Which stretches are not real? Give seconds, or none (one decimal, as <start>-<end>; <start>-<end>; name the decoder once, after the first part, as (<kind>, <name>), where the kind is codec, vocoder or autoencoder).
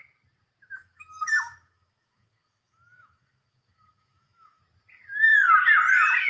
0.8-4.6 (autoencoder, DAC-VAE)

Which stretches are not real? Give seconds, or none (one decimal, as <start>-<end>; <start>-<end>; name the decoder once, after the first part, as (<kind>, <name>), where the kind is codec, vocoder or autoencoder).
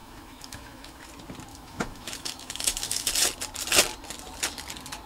0.0-1.1 (autoencoder, DAC-VAE); 1.5-3.1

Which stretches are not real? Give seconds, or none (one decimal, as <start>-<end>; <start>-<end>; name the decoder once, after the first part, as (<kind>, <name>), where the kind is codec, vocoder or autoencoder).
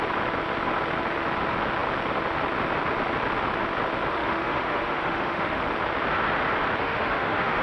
4.1-5.6 (autoencoder, DAC-VAE); 6.8-7.6